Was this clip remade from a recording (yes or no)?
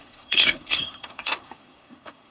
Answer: yes